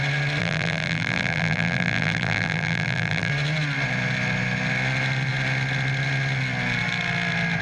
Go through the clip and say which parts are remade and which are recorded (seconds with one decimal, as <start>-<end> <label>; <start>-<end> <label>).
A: 0.0-0.4 recorded; 0.4-3.3 remade; 3.3-7.6 recorded